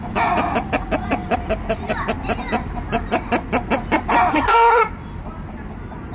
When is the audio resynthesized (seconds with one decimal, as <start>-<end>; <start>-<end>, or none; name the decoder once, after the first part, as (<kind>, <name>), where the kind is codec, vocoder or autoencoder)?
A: 4.3-4.8 (codec, SNAC)